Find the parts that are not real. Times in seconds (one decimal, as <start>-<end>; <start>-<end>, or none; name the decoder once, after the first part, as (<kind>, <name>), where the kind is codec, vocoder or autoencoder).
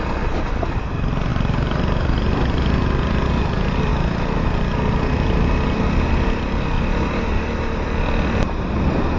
0.0-9.2 (vocoder, BigVGAN v2)